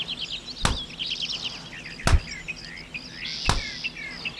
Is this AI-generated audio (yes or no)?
no